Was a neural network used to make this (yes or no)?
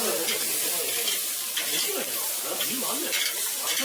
no